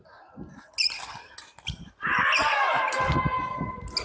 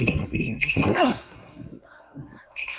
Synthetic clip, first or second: second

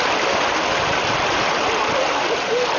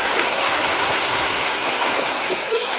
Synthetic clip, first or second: second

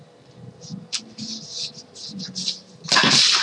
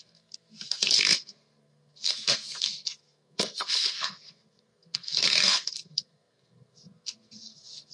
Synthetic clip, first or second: second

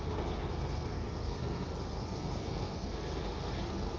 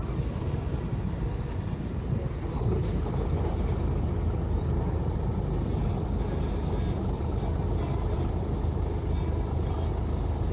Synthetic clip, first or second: first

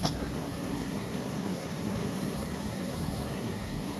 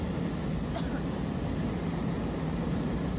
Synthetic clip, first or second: first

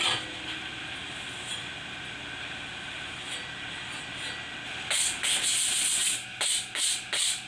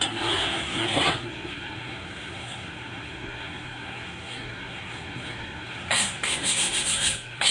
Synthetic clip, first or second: second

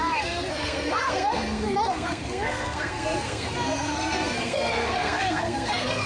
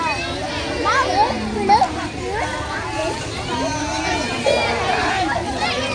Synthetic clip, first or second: first